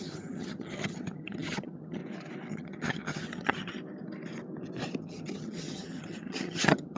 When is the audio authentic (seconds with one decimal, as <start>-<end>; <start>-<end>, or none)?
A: 2.0-2.5; 3.8-5.0